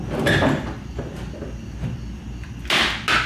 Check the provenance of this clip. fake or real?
real